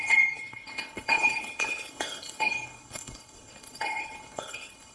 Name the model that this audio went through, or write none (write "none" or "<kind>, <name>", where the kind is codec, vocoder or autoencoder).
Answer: codec, HILCodec